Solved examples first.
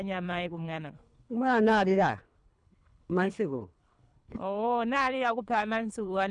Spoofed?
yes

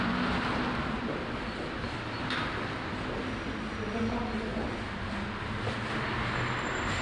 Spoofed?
no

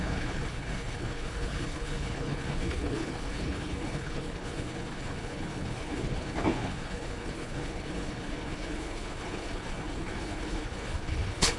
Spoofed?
yes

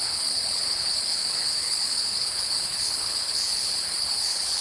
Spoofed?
yes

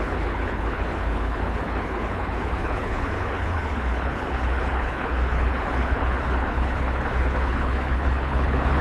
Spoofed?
yes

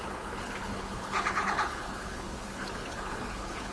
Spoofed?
yes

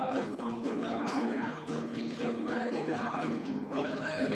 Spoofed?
yes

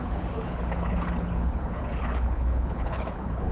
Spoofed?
yes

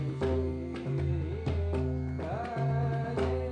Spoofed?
no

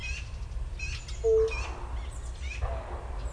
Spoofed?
no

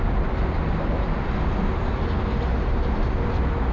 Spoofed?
no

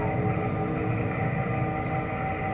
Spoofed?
no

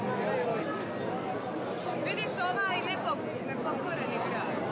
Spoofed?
no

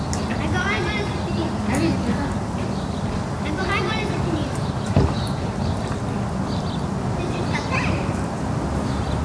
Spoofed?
no